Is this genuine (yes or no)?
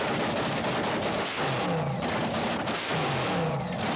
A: yes